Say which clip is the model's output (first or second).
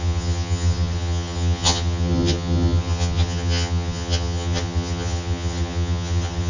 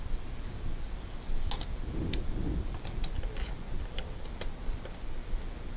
first